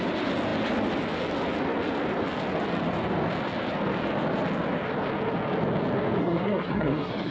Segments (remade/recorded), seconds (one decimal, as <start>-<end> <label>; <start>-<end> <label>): 0.0-6.2 recorded; 6.2-7.3 remade